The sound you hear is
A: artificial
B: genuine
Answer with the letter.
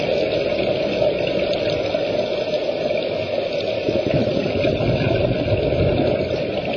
B